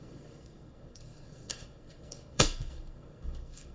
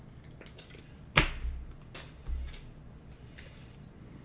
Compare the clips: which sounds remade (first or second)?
first